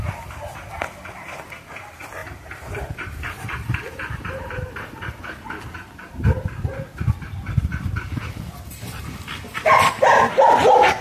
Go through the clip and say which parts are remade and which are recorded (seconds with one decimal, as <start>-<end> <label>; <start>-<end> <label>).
0.0-2.2 recorded; 2.2-5.2 remade; 5.2-11.0 recorded